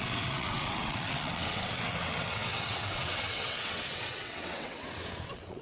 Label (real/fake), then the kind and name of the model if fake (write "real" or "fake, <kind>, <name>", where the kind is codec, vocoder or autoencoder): fake, vocoder, WaveNeXt